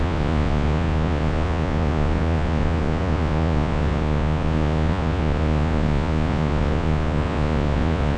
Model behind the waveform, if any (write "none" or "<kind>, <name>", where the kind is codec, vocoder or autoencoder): vocoder, Vocos